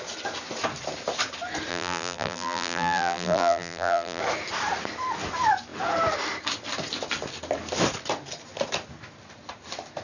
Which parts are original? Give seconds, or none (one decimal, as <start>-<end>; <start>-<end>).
0.0-1.7; 4.2-10.0